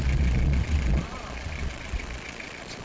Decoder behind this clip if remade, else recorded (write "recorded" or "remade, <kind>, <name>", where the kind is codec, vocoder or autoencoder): remade, vocoder, Vocos